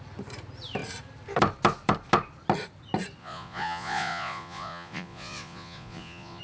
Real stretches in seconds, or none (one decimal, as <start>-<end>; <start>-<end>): 0.0-3.2